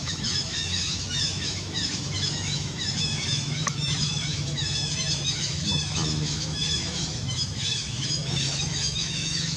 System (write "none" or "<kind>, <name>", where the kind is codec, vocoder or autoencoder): autoencoder, DAC-VAE